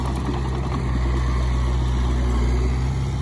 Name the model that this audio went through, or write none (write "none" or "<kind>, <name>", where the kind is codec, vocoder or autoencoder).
none